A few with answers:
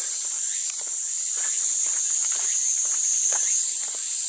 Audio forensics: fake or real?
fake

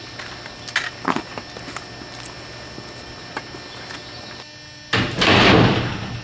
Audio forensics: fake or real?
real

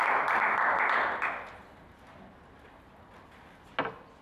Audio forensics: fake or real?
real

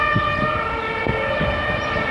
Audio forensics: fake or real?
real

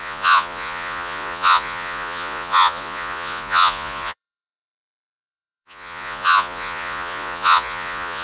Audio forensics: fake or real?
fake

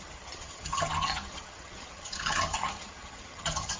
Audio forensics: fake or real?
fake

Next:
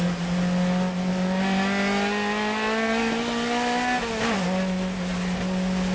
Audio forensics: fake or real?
real